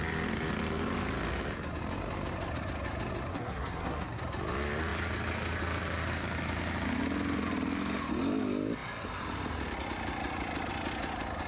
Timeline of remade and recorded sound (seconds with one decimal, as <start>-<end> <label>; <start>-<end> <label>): 0.0-3.3 recorded; 3.3-4.2 remade; 4.2-11.5 recorded

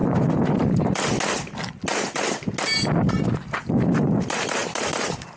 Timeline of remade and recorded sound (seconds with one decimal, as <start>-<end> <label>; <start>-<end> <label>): 0.0-5.4 recorded